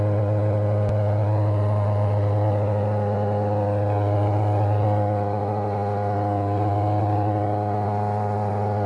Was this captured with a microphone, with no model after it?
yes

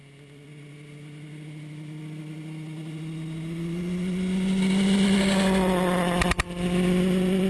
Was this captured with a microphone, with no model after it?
yes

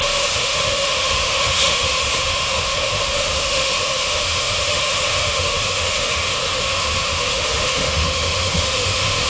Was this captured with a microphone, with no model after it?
no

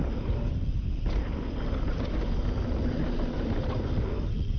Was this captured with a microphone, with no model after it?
yes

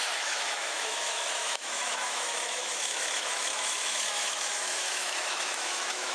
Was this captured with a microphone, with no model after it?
no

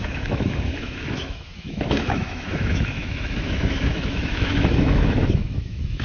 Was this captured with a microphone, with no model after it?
no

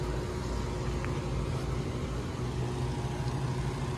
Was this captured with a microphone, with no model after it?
yes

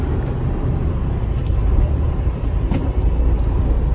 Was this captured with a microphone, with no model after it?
yes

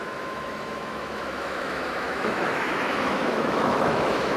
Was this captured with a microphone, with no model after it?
no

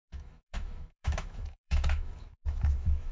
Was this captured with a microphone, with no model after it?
no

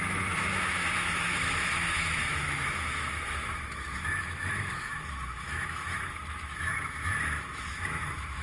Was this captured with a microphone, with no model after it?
no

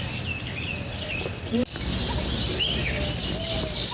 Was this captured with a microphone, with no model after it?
yes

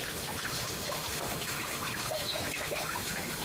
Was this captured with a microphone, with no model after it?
no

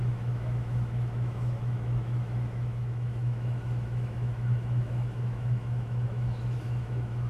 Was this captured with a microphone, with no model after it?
no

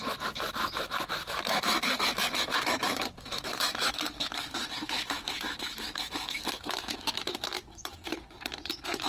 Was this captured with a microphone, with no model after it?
no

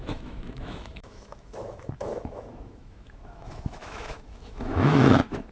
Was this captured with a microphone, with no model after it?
no